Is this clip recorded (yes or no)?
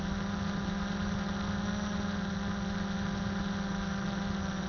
yes